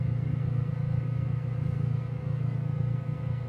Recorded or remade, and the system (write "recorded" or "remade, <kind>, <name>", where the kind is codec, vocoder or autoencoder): remade, codec, SNAC